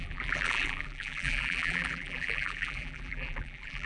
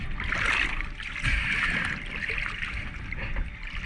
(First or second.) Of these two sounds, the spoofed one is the first